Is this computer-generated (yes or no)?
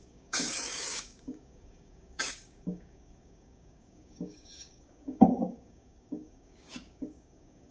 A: yes